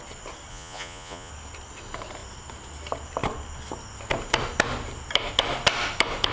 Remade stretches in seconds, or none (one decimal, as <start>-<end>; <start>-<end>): 0.5-1.3